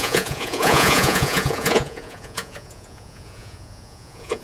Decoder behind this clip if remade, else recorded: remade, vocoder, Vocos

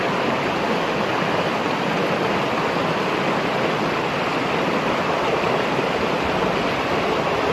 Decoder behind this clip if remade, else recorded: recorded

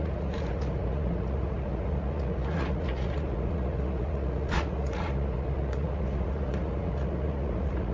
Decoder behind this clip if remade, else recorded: remade, vocoder, Vocos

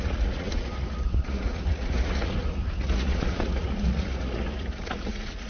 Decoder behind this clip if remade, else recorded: remade, vocoder, Vocos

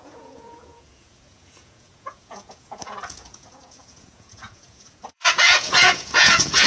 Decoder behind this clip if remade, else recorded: remade, vocoder, Vocos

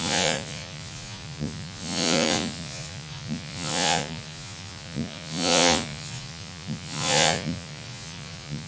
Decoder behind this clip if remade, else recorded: remade, vocoder, Vocos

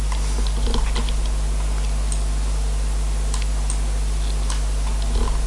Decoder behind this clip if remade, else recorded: recorded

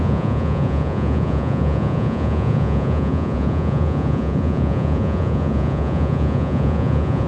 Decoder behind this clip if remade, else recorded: remade, vocoder, Vocos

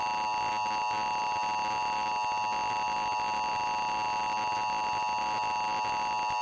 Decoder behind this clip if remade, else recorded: recorded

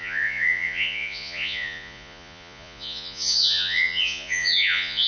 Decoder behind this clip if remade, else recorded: remade, vocoder, Vocos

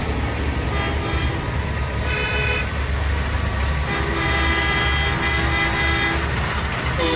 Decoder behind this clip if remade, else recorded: recorded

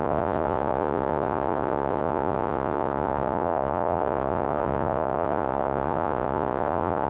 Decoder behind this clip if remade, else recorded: remade, vocoder, Vocos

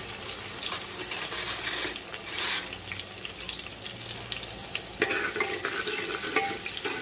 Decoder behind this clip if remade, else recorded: recorded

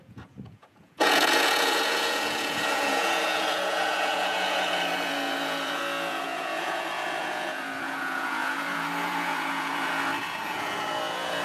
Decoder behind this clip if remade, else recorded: remade, vocoder, Vocos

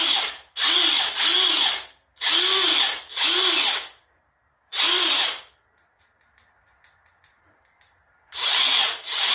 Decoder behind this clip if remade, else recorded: recorded